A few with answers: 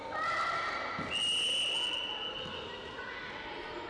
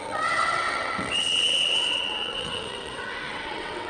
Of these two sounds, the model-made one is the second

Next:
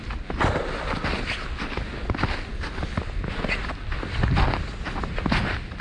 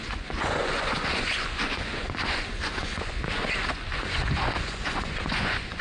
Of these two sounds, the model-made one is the second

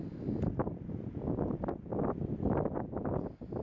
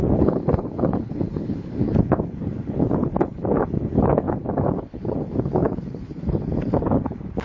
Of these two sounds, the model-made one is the second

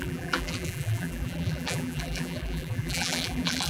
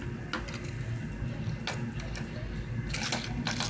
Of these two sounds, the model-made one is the first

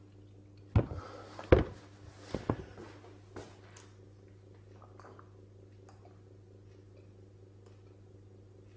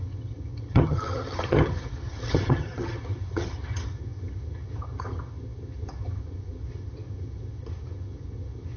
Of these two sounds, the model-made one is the second